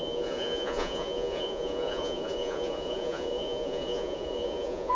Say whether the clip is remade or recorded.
remade